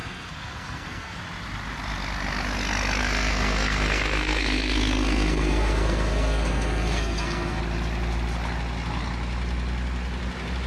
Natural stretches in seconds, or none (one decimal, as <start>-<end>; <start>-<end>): 1.2-3.0; 7.6-10.7